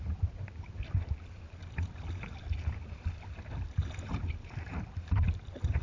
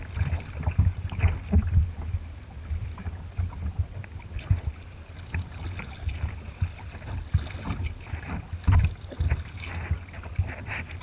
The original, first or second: second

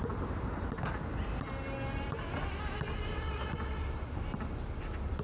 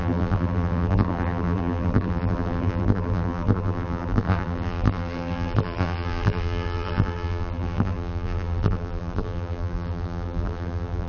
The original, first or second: first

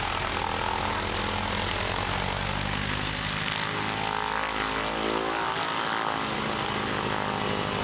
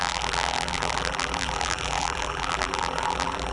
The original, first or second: first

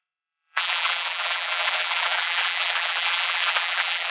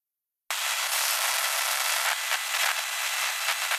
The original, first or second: second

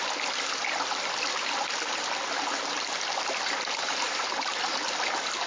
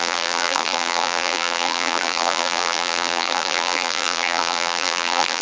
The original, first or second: first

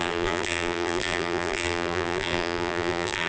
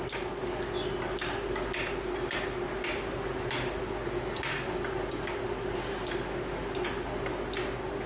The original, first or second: second